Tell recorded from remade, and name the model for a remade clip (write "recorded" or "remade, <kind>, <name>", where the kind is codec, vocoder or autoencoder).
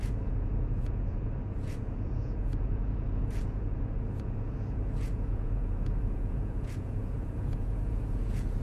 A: remade, vocoder, Vocos